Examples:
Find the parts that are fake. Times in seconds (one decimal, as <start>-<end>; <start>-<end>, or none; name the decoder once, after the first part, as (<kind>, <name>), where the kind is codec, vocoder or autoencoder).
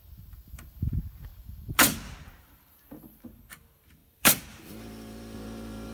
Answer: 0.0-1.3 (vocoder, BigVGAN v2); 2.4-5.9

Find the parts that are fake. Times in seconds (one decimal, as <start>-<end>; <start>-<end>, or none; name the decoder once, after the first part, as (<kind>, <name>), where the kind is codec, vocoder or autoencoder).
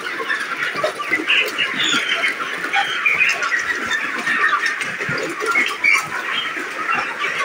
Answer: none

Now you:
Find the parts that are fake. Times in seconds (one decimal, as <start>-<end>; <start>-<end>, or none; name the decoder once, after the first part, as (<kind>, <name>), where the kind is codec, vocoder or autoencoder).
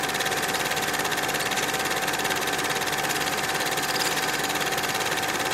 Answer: none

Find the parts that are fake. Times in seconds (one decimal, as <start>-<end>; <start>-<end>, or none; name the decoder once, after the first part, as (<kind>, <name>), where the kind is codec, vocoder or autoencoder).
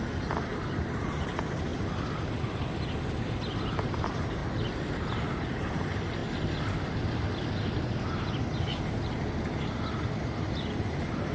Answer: 0.0-1.7 (vocoder, BigVGAN v2); 3.9-4.4; 5.4-6.2; 10.8-11.3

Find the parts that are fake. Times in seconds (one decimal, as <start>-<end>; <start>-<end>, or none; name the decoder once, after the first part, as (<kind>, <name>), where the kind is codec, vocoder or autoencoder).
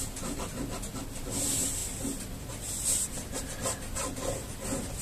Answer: none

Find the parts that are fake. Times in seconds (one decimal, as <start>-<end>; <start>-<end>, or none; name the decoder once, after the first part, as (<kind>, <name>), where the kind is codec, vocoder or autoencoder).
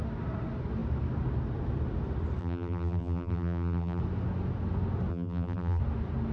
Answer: 2.4-4.0 (vocoder, BigVGAN v2); 5.1-5.8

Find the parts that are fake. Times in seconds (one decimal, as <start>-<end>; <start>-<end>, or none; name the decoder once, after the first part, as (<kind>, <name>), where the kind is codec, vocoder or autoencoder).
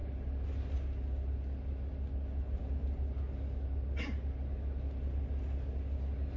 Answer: none